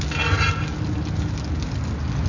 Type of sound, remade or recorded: recorded